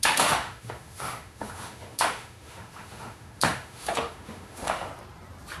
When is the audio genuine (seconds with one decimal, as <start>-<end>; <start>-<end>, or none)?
4.9-5.6